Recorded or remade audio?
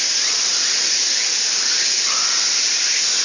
recorded